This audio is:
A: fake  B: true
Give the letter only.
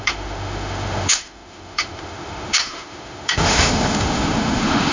A